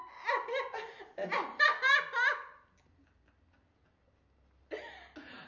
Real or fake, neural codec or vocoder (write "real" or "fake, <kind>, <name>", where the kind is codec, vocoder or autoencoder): real